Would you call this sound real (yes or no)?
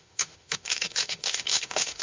no